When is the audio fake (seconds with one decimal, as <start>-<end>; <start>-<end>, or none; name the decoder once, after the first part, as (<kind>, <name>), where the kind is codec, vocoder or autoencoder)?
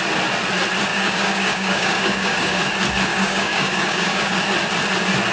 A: 0.9-2.6 (codec, DAC); 3.1-4.4